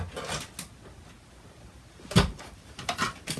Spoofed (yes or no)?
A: no